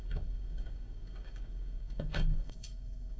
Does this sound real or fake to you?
fake